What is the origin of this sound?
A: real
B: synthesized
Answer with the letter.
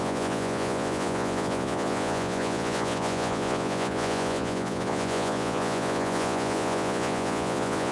B